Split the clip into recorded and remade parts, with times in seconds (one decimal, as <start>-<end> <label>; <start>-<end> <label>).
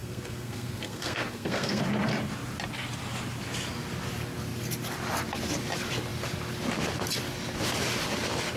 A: 0.0-1.8 remade; 1.8-8.6 recorded